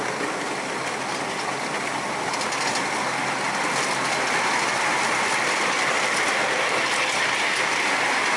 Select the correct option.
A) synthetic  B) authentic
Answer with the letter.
B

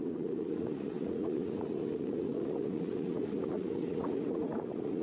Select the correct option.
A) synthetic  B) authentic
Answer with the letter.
A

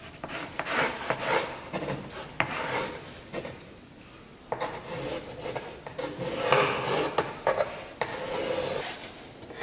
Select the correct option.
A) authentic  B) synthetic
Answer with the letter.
A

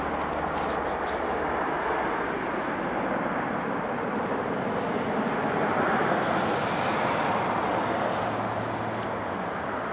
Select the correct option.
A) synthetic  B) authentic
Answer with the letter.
B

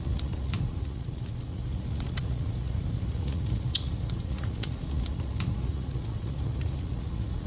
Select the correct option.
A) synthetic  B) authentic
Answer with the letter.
A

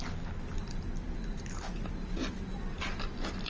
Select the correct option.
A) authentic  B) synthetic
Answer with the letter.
A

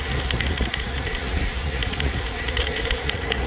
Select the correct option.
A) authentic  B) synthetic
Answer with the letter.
B